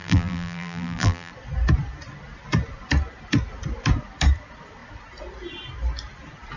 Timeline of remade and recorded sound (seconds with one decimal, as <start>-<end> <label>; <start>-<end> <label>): 0.0-1.3 remade; 1.3-6.6 recorded